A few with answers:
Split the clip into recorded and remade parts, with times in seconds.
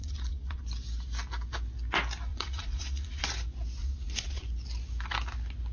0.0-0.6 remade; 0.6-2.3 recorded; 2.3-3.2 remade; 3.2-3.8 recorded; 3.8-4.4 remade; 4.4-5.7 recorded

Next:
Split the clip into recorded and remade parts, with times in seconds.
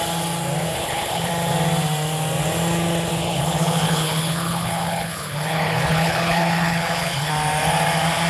0.0-0.7 recorded; 0.7-1.3 remade; 1.3-3.1 recorded; 3.1-7.3 remade; 7.3-8.3 recorded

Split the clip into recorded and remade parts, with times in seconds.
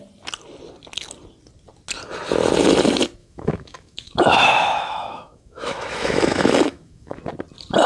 0.0-3.2 recorded; 3.2-7.2 remade; 7.2-7.9 recorded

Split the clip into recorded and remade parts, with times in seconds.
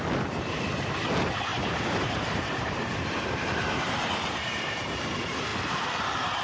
0.0-1.5 recorded; 1.5-5.1 remade; 5.1-6.4 recorded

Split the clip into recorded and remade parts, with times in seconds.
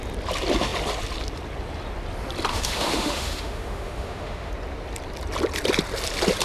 0.0-2.5 recorded; 2.5-4.5 remade; 4.5-6.4 recorded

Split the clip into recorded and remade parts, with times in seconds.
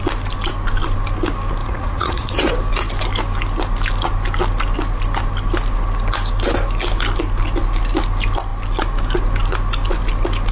0.0-1.6 recorded; 1.6-2.5 remade; 2.5-10.5 recorded